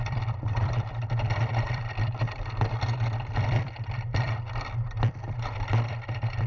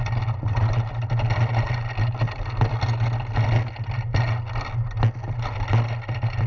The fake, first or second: first